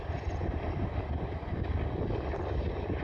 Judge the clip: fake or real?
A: real